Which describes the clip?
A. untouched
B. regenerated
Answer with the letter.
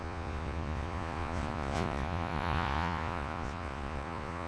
B